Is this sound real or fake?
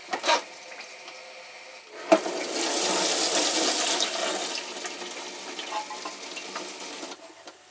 real